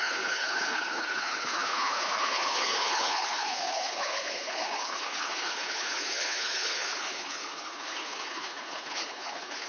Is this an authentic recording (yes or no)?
no